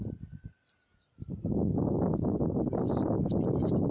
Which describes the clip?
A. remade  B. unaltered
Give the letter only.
B